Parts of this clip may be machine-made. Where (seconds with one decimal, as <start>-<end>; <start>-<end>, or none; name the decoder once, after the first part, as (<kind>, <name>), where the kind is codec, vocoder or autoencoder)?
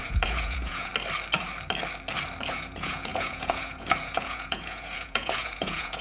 0.0-0.9 (vocoder, Vocos); 2.5-6.0